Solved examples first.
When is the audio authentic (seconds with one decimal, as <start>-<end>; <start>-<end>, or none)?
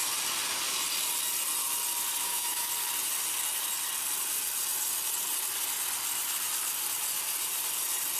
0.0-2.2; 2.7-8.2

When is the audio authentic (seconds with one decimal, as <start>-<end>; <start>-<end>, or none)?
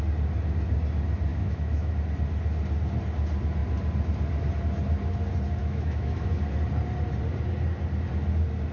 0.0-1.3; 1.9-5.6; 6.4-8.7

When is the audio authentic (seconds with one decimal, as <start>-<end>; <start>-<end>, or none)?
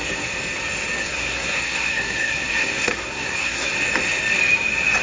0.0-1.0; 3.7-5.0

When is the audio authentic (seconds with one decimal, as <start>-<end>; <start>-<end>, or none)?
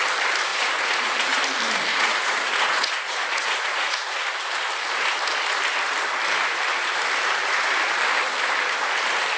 0.0-0.5; 1.4-1.9; 4.2-9.4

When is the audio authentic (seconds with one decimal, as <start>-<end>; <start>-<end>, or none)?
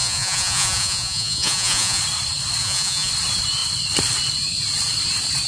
2.0-2.6; 3.1-5.5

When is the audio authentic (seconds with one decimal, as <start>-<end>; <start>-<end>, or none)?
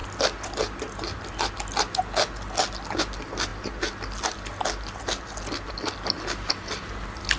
0.0-7.4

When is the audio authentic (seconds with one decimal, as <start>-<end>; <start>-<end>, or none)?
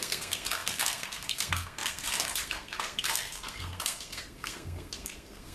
none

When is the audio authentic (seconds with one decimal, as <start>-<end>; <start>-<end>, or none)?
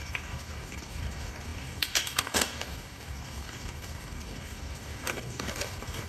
none